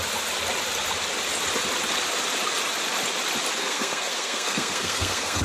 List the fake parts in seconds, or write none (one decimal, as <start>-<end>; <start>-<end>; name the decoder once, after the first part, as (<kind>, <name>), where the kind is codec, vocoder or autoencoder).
3.6-5.4 (codec, SNAC)